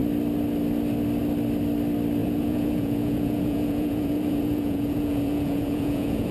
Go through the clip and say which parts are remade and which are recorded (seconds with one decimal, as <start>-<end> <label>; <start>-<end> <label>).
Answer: 0.0-2.2 recorded; 2.2-6.3 remade